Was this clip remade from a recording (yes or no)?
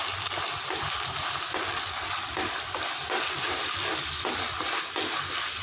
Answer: no